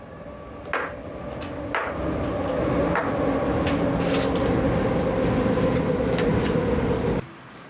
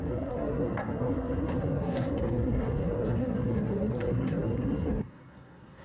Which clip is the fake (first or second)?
second